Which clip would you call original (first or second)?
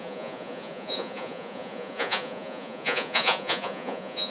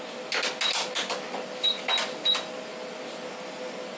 second